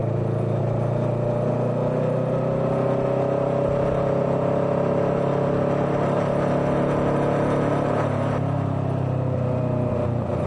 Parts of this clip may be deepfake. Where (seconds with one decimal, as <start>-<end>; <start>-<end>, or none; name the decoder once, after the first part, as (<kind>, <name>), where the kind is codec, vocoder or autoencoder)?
none